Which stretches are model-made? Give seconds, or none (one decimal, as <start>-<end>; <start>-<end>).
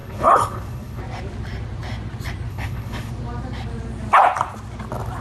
0.0-1.0; 2.5-3.1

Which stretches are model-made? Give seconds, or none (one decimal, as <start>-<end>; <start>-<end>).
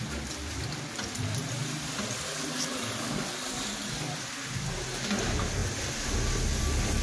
5.6-6.6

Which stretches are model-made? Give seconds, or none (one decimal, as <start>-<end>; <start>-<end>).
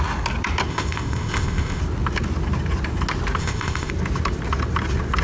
0.7-1.8; 3.4-3.9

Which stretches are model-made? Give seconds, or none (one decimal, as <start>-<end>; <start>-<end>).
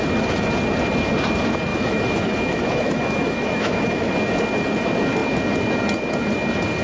1.7-4.1